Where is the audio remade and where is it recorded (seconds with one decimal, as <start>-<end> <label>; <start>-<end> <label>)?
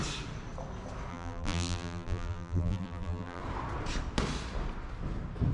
0.0-1.1 recorded; 1.1-3.4 remade; 3.4-5.5 recorded